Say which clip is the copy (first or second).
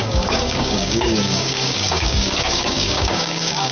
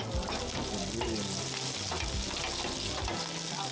first